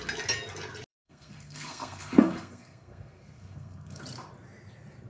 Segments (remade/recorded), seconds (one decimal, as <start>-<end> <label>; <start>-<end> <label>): 0.0-0.9 recorded; 0.9-4.0 remade; 4.0-5.1 recorded

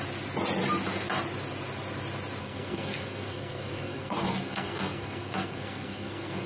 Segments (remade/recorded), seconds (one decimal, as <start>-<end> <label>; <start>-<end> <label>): 0.0-2.4 recorded; 2.4-6.5 remade

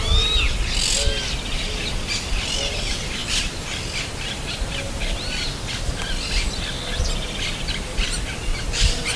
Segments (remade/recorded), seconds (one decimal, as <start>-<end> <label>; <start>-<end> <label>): 0.0-9.2 recorded

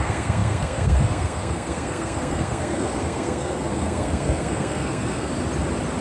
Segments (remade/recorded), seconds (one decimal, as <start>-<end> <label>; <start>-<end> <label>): 0.0-5.3 remade; 5.3-6.0 recorded